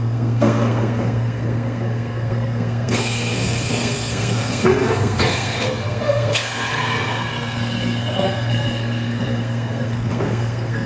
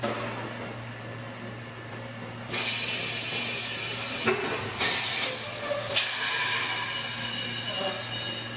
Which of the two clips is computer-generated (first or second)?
first